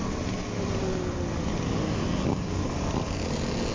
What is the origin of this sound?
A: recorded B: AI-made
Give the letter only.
A